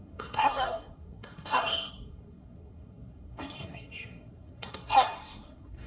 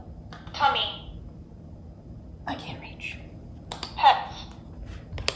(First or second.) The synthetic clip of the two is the first